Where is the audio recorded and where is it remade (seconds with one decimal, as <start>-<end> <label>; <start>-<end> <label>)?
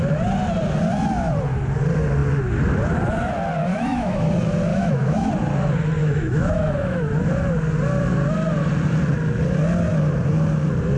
0.0-3.7 recorded; 3.7-4.3 remade; 4.3-4.7 recorded; 4.7-5.3 remade; 5.3-6.0 recorded; 6.0-7.1 remade; 7.1-11.0 recorded